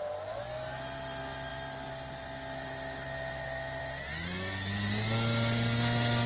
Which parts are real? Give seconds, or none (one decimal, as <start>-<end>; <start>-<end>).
0.0-6.3